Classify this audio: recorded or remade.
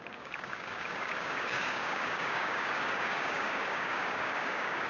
remade